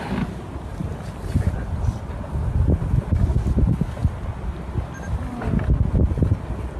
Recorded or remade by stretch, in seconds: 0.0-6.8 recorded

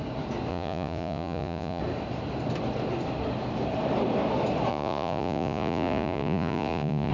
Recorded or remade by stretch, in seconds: 0.0-0.5 recorded; 0.5-1.8 remade; 1.8-4.7 recorded; 4.7-7.1 remade

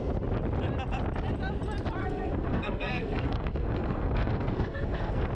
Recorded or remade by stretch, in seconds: 0.0-2.0 recorded; 2.0-5.3 remade

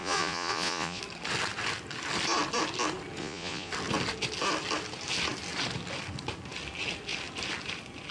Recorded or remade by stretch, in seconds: 0.0-1.0 remade; 1.0-3.2 recorded; 3.2-3.7 remade; 3.7-8.1 recorded